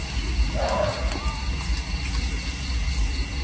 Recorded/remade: recorded